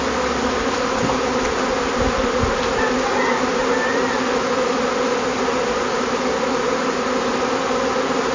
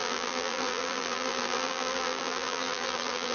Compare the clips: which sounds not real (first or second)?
second